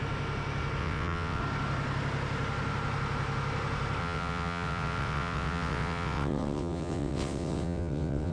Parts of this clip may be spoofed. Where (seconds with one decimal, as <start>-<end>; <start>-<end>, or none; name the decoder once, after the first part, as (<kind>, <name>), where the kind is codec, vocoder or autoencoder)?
0.8-1.4 (vocoder, WaveNeXt); 4.0-8.3